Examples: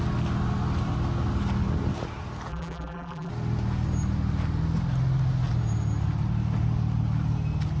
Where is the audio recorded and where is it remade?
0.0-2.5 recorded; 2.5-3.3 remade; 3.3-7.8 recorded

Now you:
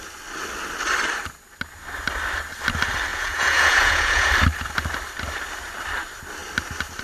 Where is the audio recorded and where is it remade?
0.0-3.1 recorded; 3.1-4.3 remade; 4.3-7.0 recorded